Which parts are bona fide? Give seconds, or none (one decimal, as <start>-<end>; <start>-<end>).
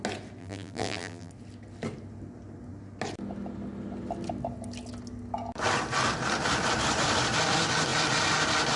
0.0-0.4; 1.3-8.8